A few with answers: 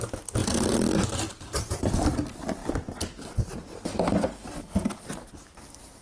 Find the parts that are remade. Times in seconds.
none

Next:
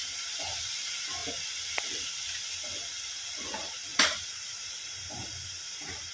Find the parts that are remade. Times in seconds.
0.0-0.6; 3.9-6.1